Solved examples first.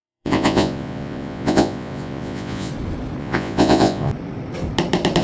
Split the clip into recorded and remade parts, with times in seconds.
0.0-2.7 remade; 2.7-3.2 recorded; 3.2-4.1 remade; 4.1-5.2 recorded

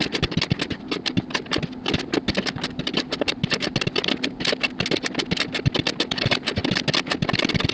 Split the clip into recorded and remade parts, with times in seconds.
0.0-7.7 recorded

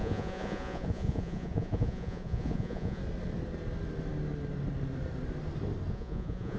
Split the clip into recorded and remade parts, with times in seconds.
0.0-3.0 remade; 3.0-5.9 recorded; 5.9-6.6 remade